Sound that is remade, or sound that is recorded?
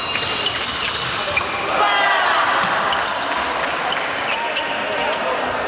recorded